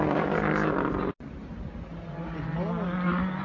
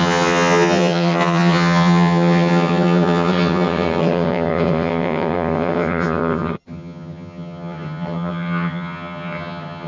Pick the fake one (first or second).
second